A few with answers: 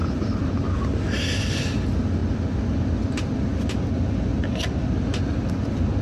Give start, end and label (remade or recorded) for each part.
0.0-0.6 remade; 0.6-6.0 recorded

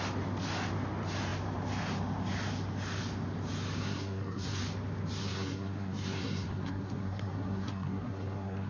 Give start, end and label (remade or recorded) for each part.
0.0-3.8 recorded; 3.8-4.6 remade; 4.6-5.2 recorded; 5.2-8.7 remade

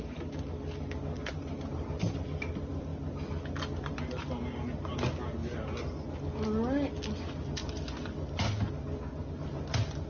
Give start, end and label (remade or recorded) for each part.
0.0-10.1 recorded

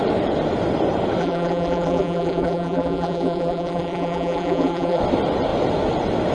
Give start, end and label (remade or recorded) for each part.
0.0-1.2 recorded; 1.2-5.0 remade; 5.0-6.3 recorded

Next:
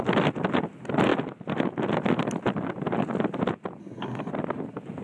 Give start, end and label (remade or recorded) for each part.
0.0-3.8 recorded; 3.8-4.3 remade; 4.3-5.0 recorded